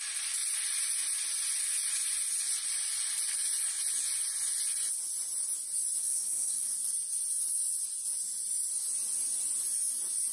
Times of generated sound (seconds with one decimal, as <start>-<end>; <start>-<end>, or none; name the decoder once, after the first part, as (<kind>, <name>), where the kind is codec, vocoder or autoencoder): 6.0-6.7 (codec, SNAC)

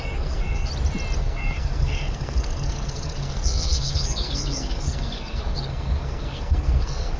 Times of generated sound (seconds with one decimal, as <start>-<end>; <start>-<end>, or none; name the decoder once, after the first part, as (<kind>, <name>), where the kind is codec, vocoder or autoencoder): 0.0-0.7 (codec, SNAC); 1.2-7.2